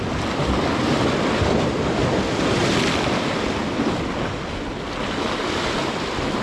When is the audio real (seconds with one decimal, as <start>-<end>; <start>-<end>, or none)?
0.0-2.6; 3.6-6.4